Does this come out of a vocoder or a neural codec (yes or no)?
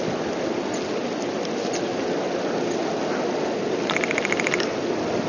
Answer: no